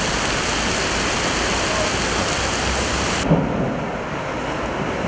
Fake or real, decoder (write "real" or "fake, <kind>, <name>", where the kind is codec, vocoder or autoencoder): real